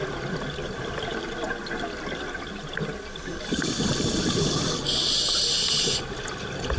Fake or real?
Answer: real